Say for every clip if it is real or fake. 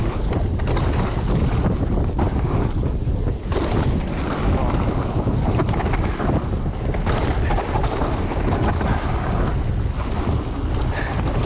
real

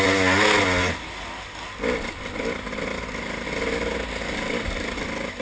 real